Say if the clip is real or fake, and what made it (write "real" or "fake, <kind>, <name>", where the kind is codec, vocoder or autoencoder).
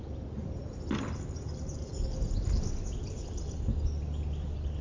real